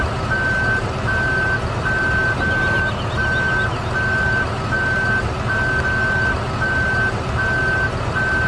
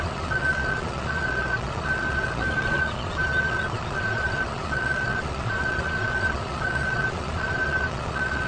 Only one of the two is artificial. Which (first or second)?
second